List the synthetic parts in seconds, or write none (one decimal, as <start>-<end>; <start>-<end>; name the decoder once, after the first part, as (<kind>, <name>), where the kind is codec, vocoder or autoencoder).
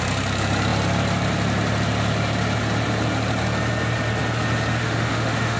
4.8-5.6 (autoencoder, DAC-VAE)